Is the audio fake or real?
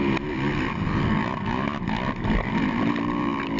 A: real